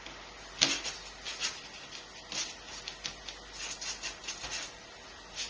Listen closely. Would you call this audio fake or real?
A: real